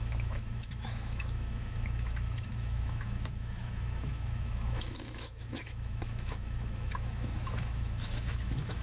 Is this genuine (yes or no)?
no